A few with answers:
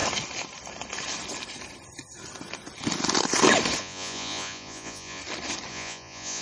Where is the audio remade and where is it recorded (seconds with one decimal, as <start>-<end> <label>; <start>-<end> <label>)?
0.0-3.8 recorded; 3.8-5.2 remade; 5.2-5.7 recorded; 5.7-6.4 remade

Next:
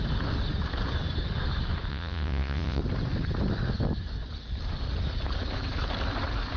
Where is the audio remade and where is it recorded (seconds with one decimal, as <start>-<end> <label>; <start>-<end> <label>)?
0.0-1.9 recorded; 1.9-2.8 remade; 2.8-6.6 recorded

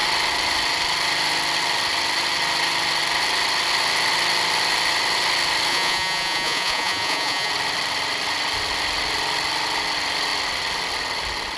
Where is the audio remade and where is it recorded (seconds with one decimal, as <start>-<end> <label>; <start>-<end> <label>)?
0.0-5.7 recorded; 5.7-7.5 remade; 7.5-11.6 recorded